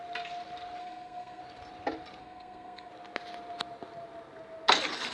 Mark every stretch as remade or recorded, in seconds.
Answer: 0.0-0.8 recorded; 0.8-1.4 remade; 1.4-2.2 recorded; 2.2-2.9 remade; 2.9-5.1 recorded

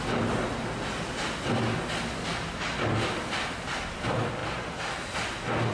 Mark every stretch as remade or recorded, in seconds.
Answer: 0.0-5.7 recorded

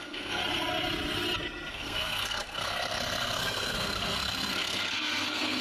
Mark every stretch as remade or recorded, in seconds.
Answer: 0.0-0.4 remade; 0.4-1.7 recorded; 1.7-5.6 remade

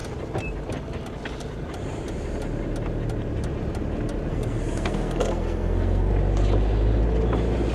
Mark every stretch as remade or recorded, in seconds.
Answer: 0.0-4.3 recorded; 4.3-6.1 remade; 6.1-7.7 recorded

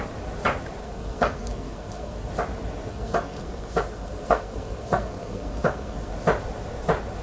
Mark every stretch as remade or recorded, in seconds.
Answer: 0.0-0.8 recorded; 0.8-2.3 remade; 2.3-2.9 recorded; 2.9-6.1 remade; 6.1-7.2 recorded

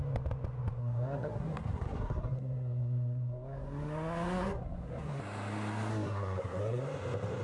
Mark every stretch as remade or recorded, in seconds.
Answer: 0.0-0.8 recorded; 0.8-5.2 remade; 5.2-5.9 recorded; 5.9-6.8 remade; 6.8-7.4 recorded

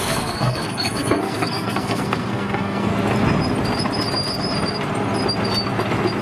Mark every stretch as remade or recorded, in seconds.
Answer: 0.0-2.9 remade; 2.9-6.2 recorded

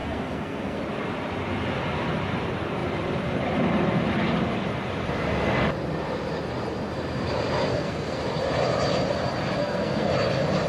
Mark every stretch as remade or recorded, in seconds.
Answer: 0.0-0.8 remade; 0.8-7.7 recorded; 7.7-8.2 remade; 8.2-9.6 recorded; 9.6-10.1 remade; 10.1-10.7 recorded